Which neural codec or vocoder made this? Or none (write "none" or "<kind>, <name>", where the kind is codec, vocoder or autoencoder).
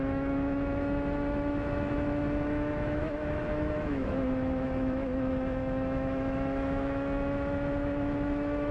autoencoder, DAC-VAE